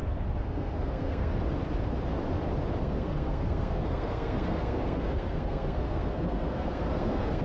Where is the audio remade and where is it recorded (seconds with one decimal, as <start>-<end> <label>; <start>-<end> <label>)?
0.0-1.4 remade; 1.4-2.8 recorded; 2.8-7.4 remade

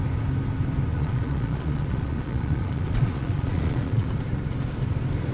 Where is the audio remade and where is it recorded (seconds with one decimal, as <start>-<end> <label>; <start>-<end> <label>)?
0.0-0.9 recorded; 0.9-4.1 remade; 4.1-5.3 recorded

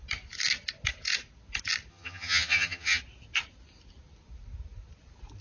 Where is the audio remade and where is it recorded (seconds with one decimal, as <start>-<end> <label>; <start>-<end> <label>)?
0.0-1.9 recorded; 1.9-3.0 remade; 3.0-5.4 recorded

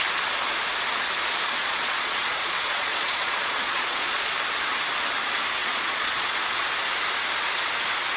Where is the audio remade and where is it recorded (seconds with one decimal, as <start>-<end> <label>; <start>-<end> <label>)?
0.0-1.6 recorded; 1.6-4.3 remade; 4.3-5.6 recorded; 5.6-6.4 remade; 6.4-8.2 recorded